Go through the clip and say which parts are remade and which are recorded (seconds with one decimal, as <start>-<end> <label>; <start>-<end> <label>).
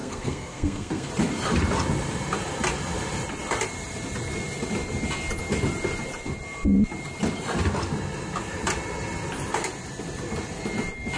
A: 0.0-1.1 remade; 1.1-11.2 recorded